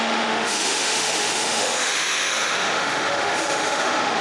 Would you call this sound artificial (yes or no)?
yes